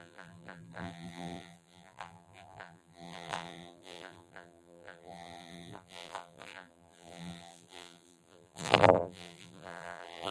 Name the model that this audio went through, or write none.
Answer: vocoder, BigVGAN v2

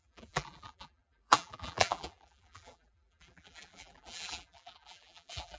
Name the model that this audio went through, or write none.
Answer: vocoder, BigVGAN v2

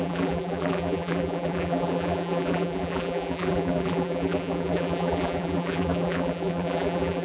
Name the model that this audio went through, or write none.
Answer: vocoder, BigVGAN v2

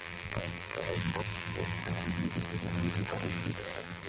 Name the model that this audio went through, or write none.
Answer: vocoder, BigVGAN v2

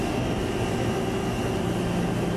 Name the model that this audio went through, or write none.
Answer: none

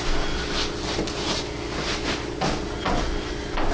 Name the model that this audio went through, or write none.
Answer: none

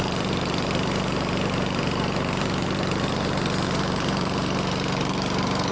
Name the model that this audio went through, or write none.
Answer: vocoder, BigVGAN v2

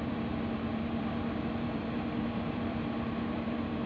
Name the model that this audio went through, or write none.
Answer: vocoder, BigVGAN v2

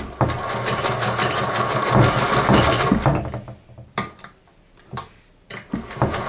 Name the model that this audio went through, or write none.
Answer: none